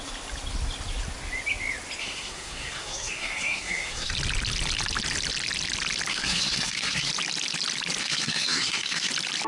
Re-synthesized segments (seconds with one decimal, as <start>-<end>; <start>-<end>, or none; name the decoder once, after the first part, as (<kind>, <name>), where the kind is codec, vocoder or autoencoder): 2.0-4.1 (codec, SNAC); 6.1-7.1; 8.0-9.1